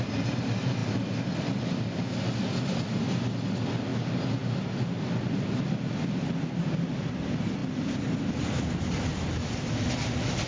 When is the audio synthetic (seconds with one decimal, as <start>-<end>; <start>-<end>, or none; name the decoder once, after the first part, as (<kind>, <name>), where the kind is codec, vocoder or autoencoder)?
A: none